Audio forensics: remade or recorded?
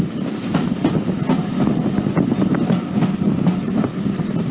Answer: recorded